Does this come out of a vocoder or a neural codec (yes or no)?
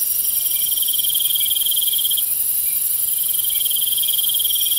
no